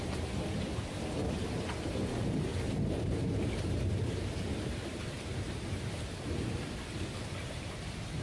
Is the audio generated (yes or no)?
yes